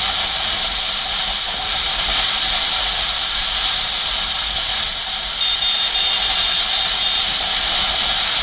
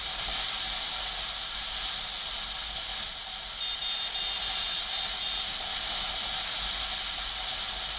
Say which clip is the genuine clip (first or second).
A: second